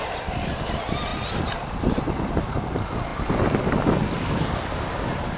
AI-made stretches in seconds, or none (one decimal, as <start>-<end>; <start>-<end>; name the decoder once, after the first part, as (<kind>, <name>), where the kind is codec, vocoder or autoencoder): none